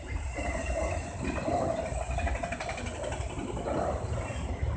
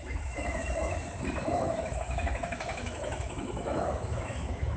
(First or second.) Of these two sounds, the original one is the first